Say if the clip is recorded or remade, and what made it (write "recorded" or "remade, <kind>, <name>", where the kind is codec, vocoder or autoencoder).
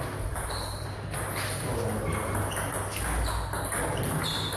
recorded